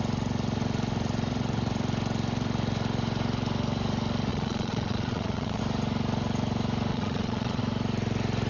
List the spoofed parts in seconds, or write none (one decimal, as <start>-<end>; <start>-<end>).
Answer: 4.3-5.6; 6.9-7.6